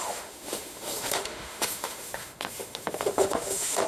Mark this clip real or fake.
fake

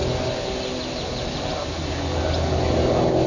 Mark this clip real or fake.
real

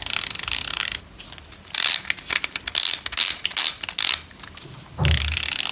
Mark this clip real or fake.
real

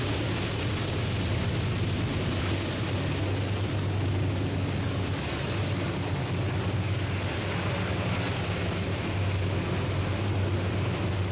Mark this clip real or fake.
real